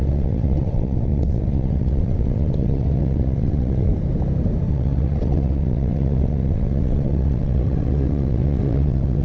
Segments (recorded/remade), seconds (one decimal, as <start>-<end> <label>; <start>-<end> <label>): 0.0-3.9 remade; 3.9-4.7 recorded; 4.7-9.2 remade